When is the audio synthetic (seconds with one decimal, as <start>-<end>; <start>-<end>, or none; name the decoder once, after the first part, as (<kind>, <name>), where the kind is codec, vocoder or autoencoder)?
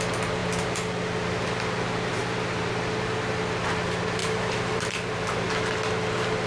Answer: 4.2-5.5 (vocoder, BigVGAN v2)